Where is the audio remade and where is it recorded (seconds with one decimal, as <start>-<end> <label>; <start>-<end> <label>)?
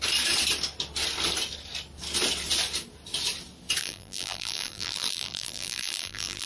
0.0-3.8 recorded; 3.8-6.5 remade